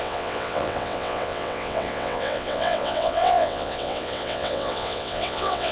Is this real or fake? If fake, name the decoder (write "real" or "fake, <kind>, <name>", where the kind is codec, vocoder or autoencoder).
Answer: fake, vocoder, WaveNeXt